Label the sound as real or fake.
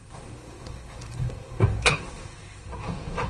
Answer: fake